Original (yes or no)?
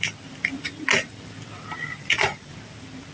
yes